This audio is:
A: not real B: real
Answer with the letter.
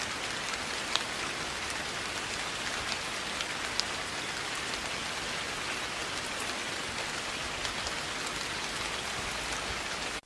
B